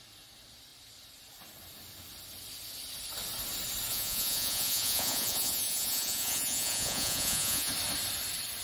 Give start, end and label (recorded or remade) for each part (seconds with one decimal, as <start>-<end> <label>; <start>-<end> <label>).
0.0-3.9 recorded; 3.9-7.7 remade; 7.7-8.6 recorded